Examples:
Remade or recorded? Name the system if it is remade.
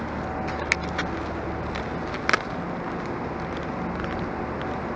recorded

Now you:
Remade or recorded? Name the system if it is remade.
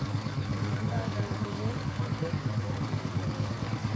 remade, codec, DAC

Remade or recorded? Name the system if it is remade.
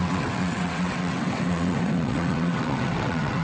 remade, vocoder, WaveNeXt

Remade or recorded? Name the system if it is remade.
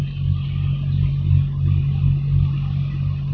recorded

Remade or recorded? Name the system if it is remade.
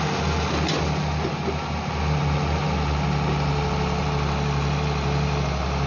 recorded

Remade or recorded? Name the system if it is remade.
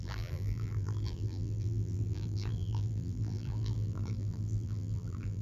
remade, vocoder, BigVGAN v2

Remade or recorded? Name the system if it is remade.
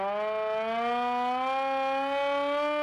recorded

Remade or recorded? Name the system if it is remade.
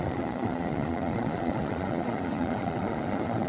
remade, vocoder, Vocos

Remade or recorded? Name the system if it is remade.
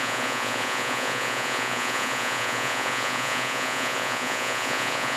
remade, vocoder, Vocos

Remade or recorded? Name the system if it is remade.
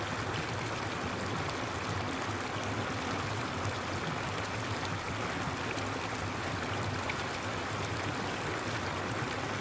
recorded